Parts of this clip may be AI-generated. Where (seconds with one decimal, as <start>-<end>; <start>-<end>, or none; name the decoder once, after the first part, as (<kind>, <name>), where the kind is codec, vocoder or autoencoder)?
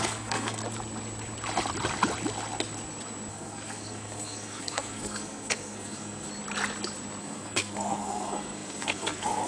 0.0-0.6 (codec, SNAC); 3.3-6.3; 7.2-9.5